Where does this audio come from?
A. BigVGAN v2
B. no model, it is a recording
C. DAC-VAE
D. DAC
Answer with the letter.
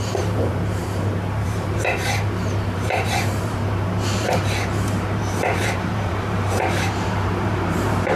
A